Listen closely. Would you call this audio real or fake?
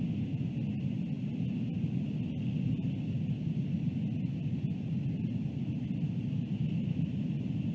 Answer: real